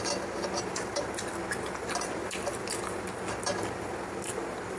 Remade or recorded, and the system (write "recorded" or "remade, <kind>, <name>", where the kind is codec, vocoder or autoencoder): recorded